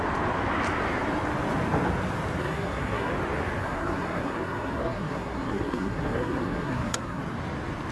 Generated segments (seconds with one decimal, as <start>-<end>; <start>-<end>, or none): 2.4-3.1; 3.6-7.2